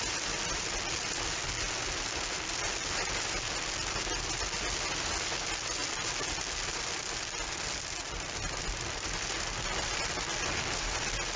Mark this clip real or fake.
real